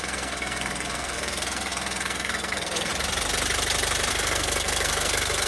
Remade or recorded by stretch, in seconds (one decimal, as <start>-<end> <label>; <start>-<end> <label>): 0.0-2.9 remade; 2.9-4.1 recorded; 4.1-5.5 remade